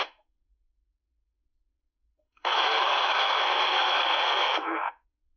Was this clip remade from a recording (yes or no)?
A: yes